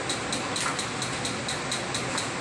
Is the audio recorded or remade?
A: recorded